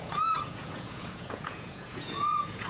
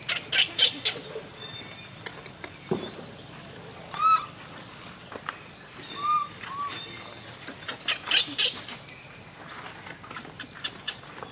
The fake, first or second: first